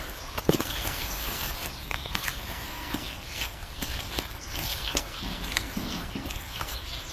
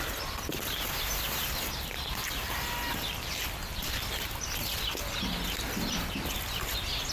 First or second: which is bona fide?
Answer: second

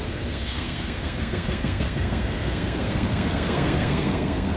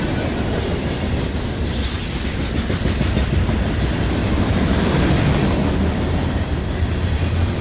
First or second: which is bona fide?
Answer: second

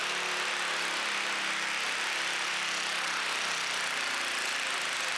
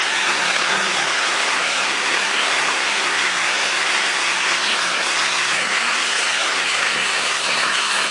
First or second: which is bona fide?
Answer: first